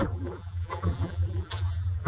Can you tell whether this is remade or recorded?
remade